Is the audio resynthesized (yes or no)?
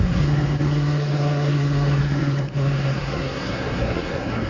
yes